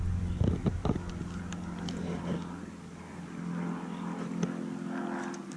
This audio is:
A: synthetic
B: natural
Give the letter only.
B